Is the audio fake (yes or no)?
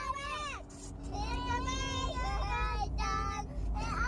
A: no